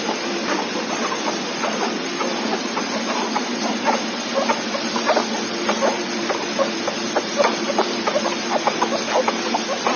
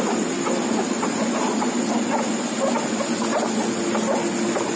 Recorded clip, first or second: second